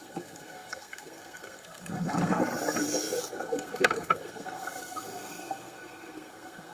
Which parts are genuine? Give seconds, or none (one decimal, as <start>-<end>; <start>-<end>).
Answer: 2.4-3.2